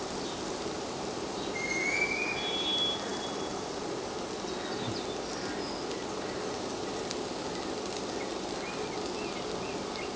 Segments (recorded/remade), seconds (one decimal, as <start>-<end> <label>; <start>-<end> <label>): 0.0-10.2 recorded